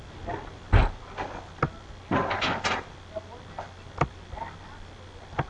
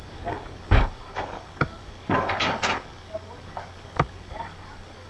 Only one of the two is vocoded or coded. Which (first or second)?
second